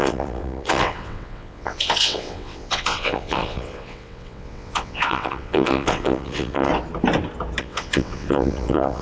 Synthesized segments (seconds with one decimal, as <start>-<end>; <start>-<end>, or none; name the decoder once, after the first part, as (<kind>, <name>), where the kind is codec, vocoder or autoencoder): 0.0-6.7 (vocoder, WaveNeXt); 7.6-9.0

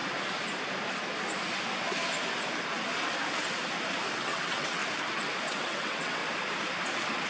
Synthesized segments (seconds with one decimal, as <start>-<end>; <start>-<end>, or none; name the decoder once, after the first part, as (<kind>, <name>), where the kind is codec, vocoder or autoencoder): 4.1-4.8 (vocoder, WaveNeXt); 5.5-6.2

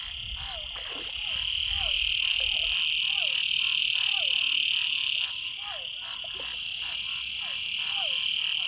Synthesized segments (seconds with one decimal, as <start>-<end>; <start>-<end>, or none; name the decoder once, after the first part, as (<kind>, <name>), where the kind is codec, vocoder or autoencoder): none

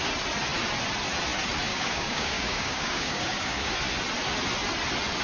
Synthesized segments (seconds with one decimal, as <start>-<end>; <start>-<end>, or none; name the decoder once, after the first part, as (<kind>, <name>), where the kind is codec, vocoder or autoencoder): 1.7-3.7 (codec, DAC)

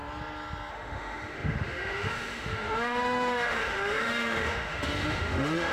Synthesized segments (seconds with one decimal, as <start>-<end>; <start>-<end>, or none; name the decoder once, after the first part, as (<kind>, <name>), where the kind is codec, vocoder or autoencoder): 0.7-5.7 (autoencoder, DAC-VAE)

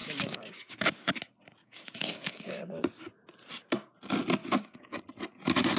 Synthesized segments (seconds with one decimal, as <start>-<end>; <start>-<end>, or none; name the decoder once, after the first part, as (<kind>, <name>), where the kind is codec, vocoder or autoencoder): 0.0-0.9 (codec, DAC); 1.6-2.8; 4.4-5.0

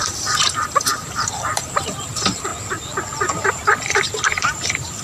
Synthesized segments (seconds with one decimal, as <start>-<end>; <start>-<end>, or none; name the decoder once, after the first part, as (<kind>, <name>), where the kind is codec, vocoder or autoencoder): 0.0-2.5 (vocoder, BigVGAN v2); 3.5-5.0